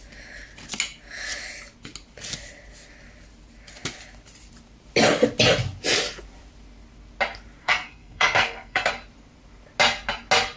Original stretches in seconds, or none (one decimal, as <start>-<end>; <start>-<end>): 0.0-7.6; 8.9-10.6